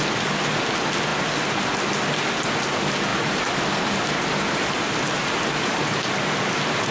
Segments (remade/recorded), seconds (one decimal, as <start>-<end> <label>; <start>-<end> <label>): 0.0-3.1 recorded; 3.1-6.1 remade; 6.1-6.9 recorded